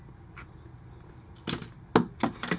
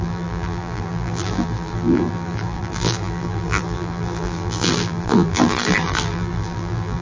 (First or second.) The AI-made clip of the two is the second